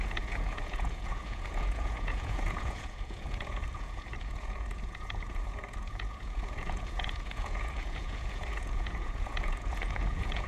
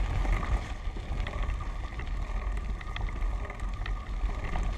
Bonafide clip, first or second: second